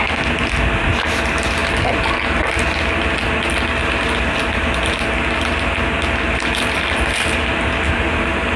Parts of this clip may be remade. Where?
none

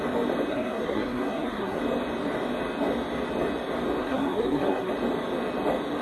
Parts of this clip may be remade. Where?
0.5-1.8 (codec, SNAC); 4.0-4.9

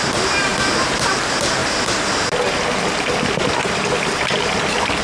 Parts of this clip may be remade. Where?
none

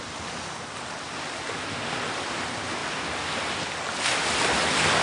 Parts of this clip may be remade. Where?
none

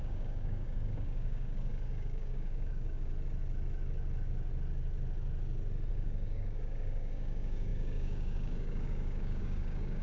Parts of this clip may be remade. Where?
0.0-3.1 (codec, DAC); 5.9-10.0

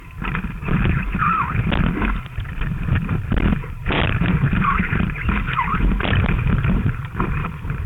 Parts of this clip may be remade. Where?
3.5-7.9 (vocoder, BigVGAN v2)

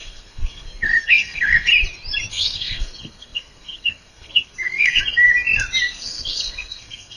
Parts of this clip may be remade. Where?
0.0-1.7 (codec, SNAC); 2.3-5.0; 5.8-7.2

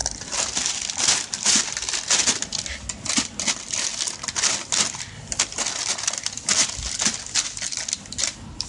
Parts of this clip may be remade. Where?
none